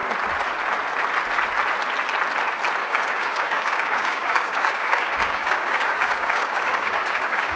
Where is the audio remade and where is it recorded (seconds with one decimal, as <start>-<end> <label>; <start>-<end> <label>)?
0.0-2.8 recorded; 2.8-7.6 remade